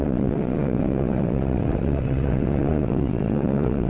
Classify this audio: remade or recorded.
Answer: remade